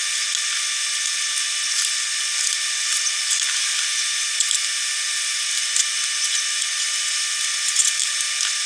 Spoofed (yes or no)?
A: no